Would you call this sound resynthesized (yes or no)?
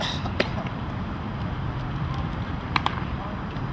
yes